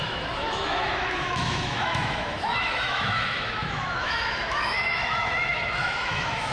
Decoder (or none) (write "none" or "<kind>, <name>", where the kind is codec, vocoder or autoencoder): autoencoder, DAC-VAE